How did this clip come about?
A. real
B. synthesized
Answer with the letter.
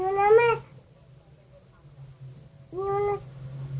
A